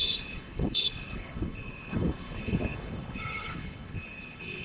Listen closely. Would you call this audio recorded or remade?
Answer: remade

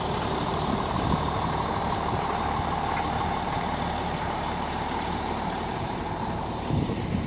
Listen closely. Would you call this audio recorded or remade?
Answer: remade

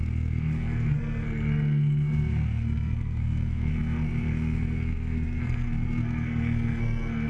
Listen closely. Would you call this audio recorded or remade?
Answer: remade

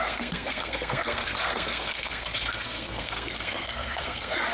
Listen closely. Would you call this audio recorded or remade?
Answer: remade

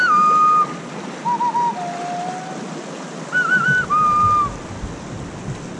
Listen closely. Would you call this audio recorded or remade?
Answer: recorded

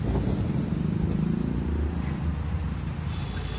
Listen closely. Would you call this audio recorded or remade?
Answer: recorded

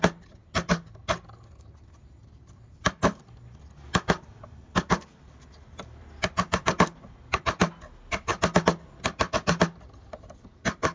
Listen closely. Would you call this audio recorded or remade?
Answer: recorded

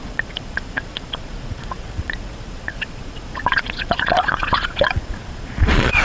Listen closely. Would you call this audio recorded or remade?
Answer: remade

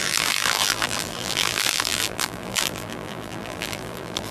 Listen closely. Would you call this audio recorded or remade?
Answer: remade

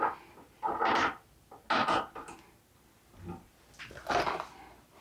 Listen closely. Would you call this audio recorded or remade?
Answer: recorded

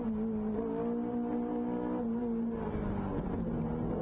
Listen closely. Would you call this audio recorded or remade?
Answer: recorded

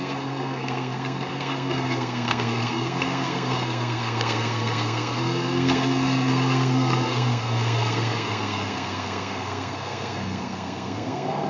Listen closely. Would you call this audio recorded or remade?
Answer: remade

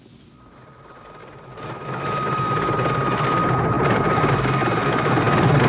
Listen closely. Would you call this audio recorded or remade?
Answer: recorded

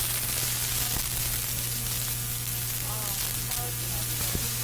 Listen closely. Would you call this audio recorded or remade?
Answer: recorded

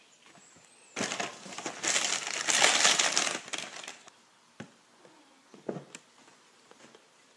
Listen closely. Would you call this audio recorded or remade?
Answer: recorded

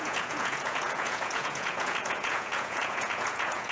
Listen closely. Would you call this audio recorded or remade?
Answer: remade